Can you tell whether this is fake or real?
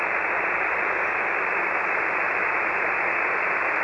real